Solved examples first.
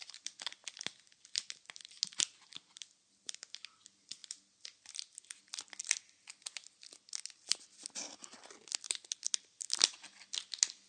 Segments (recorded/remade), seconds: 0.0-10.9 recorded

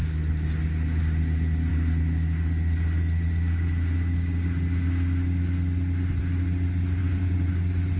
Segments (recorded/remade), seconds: 0.0-7.0 recorded; 7.0-7.5 remade; 7.5-8.0 recorded

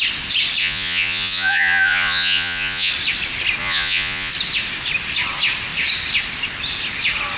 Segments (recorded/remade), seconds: 0.0-0.6 recorded; 0.6-2.9 remade; 2.9-3.6 recorded; 3.6-4.3 remade; 4.3-7.4 recorded

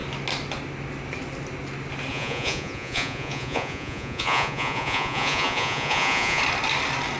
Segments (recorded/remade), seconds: 0.0-2.1 recorded; 2.1-6.4 remade; 6.4-7.2 recorded

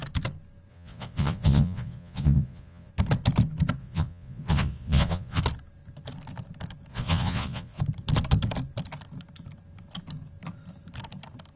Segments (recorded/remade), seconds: 0.0-0.7 recorded; 0.7-2.9 remade; 2.9-3.8 recorded; 3.8-5.4 remade; 5.4-6.9 recorded; 6.9-7.8 remade; 7.8-11.6 recorded